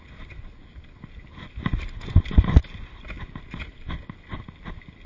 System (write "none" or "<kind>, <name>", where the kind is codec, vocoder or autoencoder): none